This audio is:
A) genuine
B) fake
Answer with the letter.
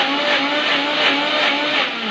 A